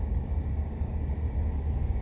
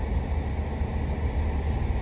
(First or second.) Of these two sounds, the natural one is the second